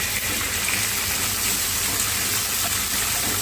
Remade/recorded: recorded